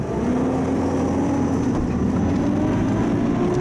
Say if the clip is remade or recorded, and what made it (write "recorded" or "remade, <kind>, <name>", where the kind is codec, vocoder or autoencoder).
recorded